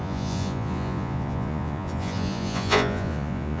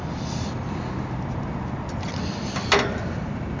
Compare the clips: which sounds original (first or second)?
second